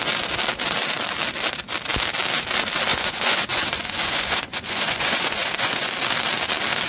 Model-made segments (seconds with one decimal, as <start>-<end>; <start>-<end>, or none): 2.9-5.9